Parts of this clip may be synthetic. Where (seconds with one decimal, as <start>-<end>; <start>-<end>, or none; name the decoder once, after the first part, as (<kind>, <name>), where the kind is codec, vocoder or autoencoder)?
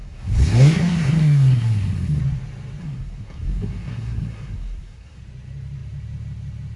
0.0-2.2 (codec, SNAC); 2.8-5.2